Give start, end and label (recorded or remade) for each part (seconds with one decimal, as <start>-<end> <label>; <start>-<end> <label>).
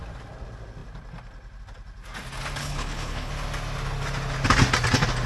0.0-2.6 recorded; 2.6-3.3 remade; 3.3-5.3 recorded